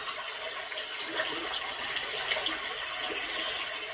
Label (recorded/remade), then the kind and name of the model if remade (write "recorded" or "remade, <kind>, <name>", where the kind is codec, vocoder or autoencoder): recorded